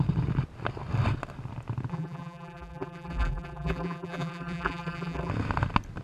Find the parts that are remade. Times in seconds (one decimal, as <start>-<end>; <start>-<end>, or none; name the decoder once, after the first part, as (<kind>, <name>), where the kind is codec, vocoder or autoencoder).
1.9-5.3 (vocoder, BigVGAN v2)

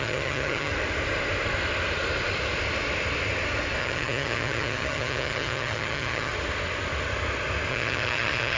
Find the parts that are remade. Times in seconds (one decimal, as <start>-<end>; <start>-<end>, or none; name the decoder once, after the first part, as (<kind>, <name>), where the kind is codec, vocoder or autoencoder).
0.0-0.7 (vocoder, HiFi-GAN); 3.8-6.3; 7.7-8.6

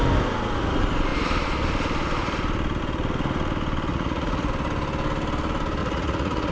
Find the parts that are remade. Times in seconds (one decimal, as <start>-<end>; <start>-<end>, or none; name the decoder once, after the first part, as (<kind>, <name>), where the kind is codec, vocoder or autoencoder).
3.9-4.5 (vocoder, Vocos); 5.8-6.5

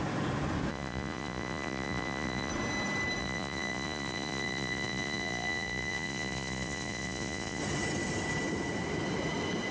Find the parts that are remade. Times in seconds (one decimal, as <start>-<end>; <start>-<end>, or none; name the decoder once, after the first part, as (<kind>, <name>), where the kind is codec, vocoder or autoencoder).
0.7-2.5 (vocoder, Vocos); 3.2-7.6

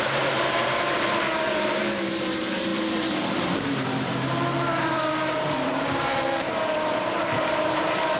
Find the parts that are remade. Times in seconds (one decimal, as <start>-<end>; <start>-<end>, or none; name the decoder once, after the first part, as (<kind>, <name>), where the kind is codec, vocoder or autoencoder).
0.0-8.2 (vocoder, BigVGAN v2)